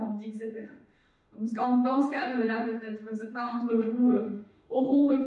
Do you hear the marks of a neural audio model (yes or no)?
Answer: yes